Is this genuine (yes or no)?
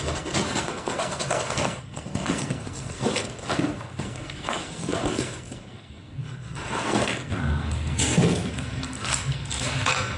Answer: no